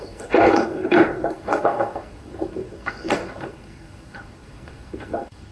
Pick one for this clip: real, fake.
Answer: fake